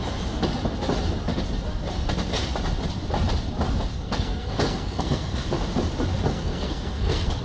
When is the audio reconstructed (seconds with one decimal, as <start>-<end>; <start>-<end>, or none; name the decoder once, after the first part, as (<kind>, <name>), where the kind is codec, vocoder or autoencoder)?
3.9-5.5 (codec, SNAC); 6.3-7.4